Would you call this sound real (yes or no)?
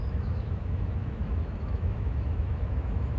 no